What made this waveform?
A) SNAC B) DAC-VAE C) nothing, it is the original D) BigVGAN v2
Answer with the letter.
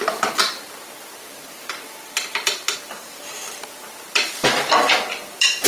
D